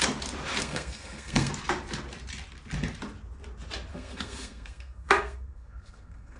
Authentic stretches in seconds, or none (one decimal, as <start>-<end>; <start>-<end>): 0.0-0.6; 1.5-3.9